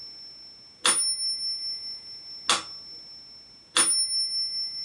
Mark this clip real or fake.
real